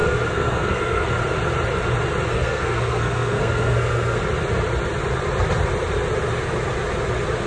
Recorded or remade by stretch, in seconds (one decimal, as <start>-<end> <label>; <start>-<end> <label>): 0.0-1.1 remade; 1.1-2.3 recorded; 2.3-4.2 remade; 4.2-7.5 recorded